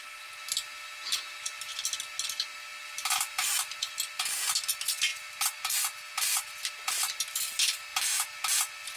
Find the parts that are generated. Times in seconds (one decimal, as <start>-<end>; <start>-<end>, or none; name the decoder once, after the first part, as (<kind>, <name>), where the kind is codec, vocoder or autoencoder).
3.0-3.7 (vocoder, BigVGAN v2)